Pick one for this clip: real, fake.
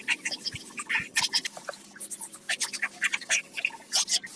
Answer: real